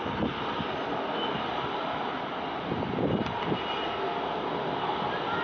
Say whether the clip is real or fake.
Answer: real